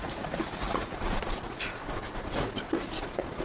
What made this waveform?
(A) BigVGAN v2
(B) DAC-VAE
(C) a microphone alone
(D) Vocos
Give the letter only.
D